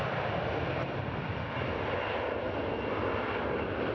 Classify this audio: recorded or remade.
recorded